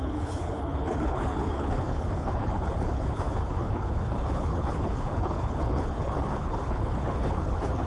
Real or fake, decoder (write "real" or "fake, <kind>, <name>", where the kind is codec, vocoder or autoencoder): fake, codec, HILCodec